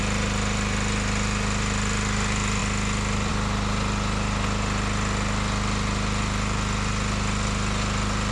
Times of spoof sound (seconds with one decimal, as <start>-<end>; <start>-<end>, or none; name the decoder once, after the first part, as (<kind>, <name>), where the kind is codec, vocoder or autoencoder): none